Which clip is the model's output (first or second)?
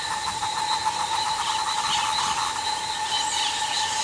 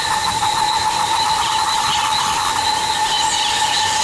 second